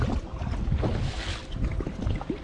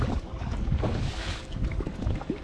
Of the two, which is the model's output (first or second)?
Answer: second